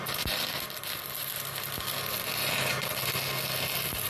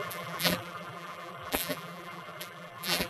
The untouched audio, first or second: first